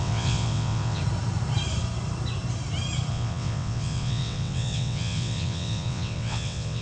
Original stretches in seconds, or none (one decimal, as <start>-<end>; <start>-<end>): 1.0-3.1

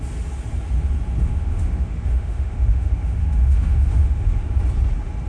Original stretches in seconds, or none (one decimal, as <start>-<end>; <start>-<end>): 0.0-1.2; 4.4-5.3

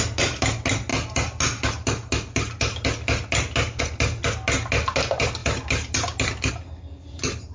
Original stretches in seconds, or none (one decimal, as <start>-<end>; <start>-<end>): 0.0-7.5